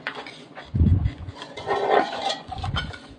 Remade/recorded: remade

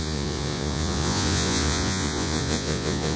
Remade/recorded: remade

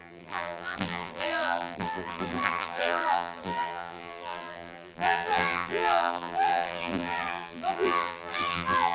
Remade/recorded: remade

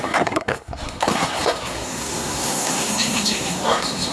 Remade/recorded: remade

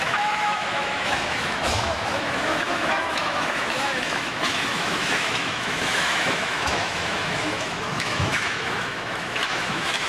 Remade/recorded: remade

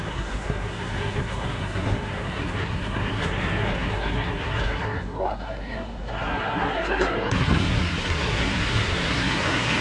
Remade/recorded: remade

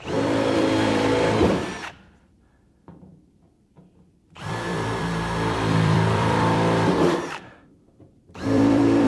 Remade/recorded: remade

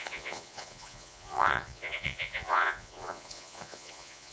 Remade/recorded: remade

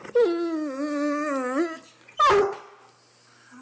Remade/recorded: recorded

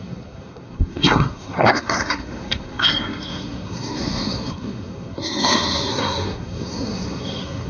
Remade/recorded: remade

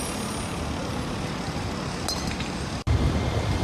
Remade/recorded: recorded